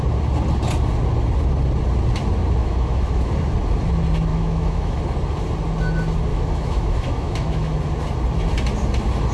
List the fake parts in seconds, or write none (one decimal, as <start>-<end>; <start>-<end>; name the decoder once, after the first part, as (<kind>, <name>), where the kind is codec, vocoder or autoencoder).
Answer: 2.6-3.3 (autoencoder, DAC-VAE); 4.3-5.0; 6.3-7.8